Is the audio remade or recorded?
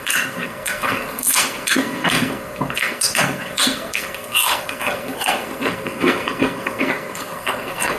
remade